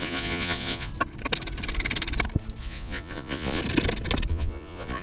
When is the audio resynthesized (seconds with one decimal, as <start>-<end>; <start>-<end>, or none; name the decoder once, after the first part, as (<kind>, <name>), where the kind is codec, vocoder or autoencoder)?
0.0-0.9 (vocoder, Vocos); 2.6-3.6; 4.3-5.0